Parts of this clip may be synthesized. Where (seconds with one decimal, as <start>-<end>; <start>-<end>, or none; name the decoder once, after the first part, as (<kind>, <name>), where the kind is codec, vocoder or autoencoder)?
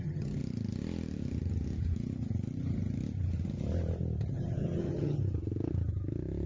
0.0-0.4 (vocoder, HiFi-GAN); 4.3-5.2